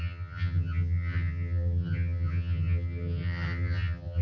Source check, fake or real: fake